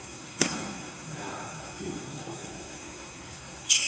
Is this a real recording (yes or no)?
no